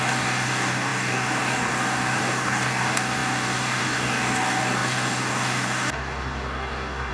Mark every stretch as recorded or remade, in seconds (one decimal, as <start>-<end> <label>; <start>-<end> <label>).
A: 0.0-7.1 remade